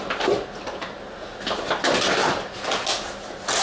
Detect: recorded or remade recorded